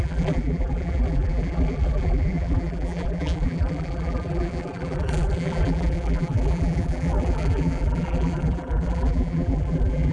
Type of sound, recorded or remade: remade